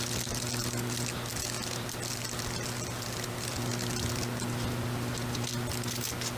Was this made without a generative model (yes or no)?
yes